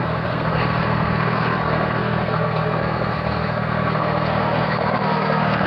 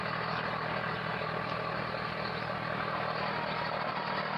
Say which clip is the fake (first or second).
first